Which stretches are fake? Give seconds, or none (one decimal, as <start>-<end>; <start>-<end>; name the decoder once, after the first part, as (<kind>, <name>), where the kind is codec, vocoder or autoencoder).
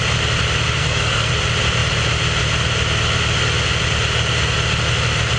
0.8-1.3 (codec, SNAC)